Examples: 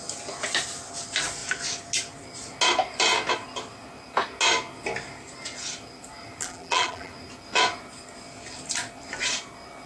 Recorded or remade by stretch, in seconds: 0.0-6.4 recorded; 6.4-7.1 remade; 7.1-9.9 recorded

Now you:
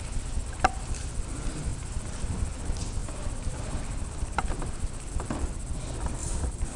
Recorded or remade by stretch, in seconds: 0.0-1.7 recorded; 1.7-2.3 remade; 2.3-3.0 recorded; 3.0-5.1 remade; 5.1-6.2 recorded; 6.2-6.8 remade

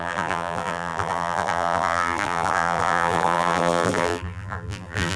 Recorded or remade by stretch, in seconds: 0.0-5.2 remade

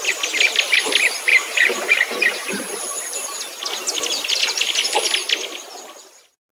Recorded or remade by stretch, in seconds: 0.0-1.3 recorded; 1.3-3.4 remade; 3.4-6.5 recorded

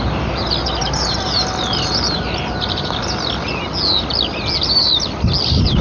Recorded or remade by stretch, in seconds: 0.0-0.8 recorded; 0.8-3.0 remade; 3.0-5.8 recorded